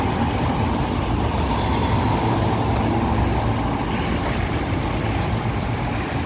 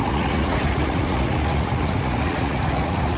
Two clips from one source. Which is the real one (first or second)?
first